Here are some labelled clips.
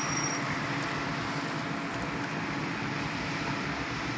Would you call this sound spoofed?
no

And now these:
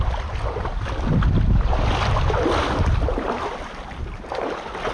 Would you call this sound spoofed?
no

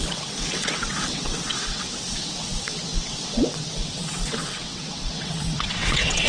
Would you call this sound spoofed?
yes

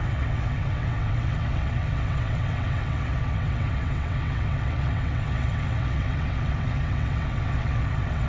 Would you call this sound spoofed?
yes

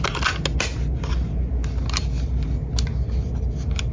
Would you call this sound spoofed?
no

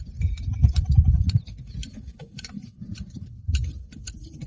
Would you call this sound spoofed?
no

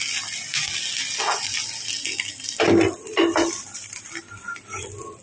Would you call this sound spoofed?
no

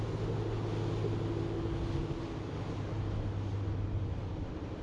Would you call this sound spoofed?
no